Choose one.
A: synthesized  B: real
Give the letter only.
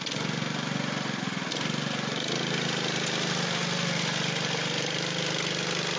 B